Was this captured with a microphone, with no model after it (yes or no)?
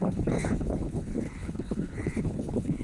no